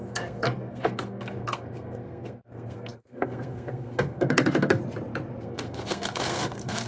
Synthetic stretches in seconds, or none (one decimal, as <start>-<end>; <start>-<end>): 0.0-4.8; 5.4-6.9